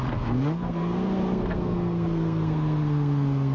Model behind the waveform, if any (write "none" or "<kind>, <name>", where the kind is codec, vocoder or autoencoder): codec, SNAC